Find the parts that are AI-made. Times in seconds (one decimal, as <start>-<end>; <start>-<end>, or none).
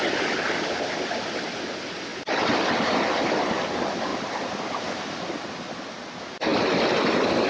none